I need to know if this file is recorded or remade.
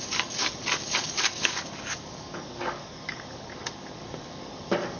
remade